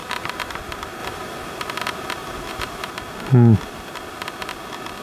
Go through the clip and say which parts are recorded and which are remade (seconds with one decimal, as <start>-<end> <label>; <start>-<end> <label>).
0.0-0.6 remade; 0.6-1.0 recorded; 1.0-2.9 remade; 2.9-5.0 recorded